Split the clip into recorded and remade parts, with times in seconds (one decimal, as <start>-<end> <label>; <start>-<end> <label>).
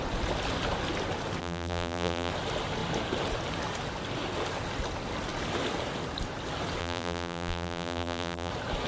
0.0-1.4 recorded; 1.4-2.3 remade; 2.3-6.8 recorded; 6.8-8.5 remade; 8.5-8.9 recorded